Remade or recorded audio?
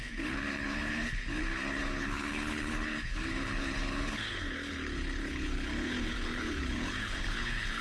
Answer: remade